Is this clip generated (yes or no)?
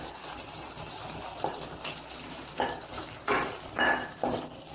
no